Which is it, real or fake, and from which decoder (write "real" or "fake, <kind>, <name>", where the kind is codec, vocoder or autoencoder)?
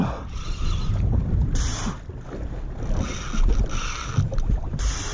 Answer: real